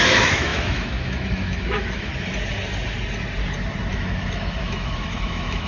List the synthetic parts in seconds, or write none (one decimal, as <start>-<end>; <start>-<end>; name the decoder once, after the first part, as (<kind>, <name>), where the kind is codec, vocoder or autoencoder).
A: 0.0-2.1 (autoencoder, DAC-VAE); 3.9-5.7